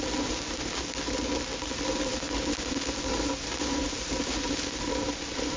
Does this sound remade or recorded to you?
recorded